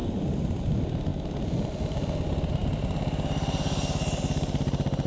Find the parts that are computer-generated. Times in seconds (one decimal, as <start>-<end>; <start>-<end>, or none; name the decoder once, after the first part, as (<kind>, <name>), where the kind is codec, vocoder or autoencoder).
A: none